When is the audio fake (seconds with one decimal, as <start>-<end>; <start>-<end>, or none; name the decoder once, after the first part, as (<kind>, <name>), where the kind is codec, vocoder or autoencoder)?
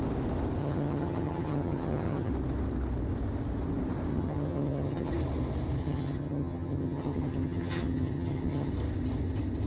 0.6-2.3 (vocoder, HiFi-GAN); 4.1-5.1; 5.8-8.7